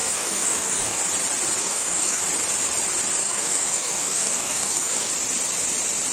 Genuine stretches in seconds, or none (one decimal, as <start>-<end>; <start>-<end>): 1.0-1.6; 2.2-3.2; 5.1-6.1